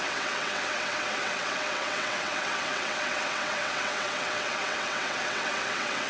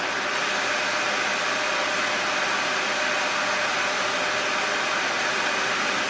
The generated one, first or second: first